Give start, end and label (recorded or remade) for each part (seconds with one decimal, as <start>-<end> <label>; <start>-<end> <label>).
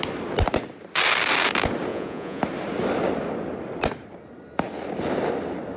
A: 0.0-1.9 recorded; 1.9-2.4 remade; 2.4-5.8 recorded